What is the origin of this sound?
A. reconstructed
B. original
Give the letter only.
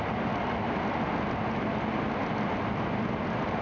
B